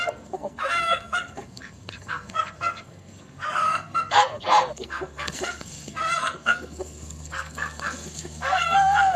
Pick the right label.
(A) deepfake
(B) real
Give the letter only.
A